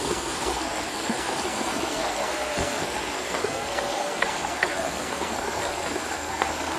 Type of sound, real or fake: fake